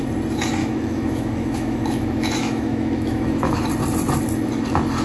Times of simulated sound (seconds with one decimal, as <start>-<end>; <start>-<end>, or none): 0.6-3.6